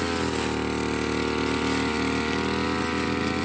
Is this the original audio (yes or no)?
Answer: yes